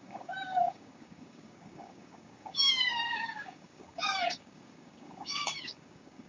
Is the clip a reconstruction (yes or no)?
yes